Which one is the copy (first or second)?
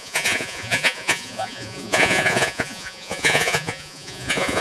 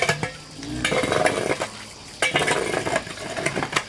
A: first